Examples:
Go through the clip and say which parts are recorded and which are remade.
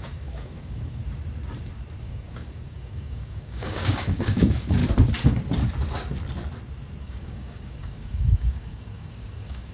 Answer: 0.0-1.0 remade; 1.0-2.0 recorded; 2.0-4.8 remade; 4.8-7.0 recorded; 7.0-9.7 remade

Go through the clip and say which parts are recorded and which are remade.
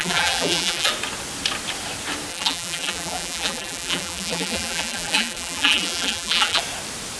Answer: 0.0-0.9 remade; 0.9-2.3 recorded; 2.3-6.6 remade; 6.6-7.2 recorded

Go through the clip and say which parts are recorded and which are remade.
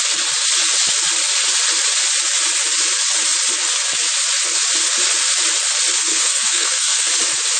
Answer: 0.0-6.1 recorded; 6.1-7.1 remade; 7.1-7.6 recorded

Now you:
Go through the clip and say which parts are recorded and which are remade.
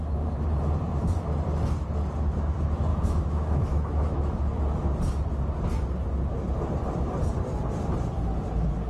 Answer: 0.0-2.9 recorded; 2.9-4.4 remade; 4.4-8.9 recorded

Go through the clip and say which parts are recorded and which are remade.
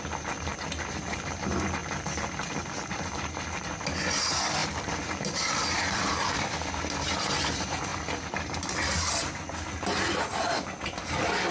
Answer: 0.0-1.8 recorded; 1.8-3.3 remade; 3.3-4.6 recorded; 4.6-6.7 remade; 6.7-11.5 recorded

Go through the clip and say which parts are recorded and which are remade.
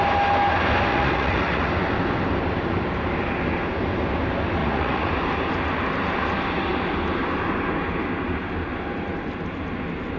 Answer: 0.0-0.9 recorded; 0.9-1.7 remade; 1.7-4.6 recorded; 4.6-5.1 remade; 5.1-10.2 recorded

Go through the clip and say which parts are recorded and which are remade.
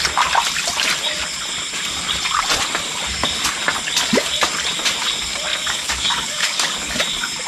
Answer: 0.0-5.5 recorded; 5.5-7.0 remade; 7.0-7.5 recorded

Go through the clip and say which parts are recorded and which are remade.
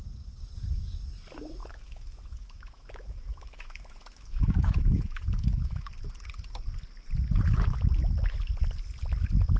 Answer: 0.0-1.6 recorded; 1.6-5.9 remade; 5.9-9.6 recorded